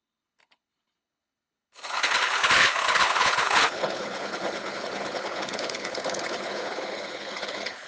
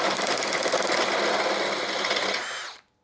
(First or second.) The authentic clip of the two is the second